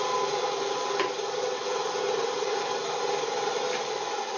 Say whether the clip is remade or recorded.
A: recorded